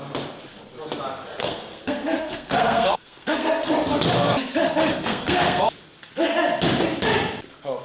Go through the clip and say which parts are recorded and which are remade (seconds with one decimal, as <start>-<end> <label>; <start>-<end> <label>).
0.0-1.4 recorded; 1.4-3.7 remade; 3.7-4.9 recorded; 4.9-5.6 remade; 5.6-7.8 recorded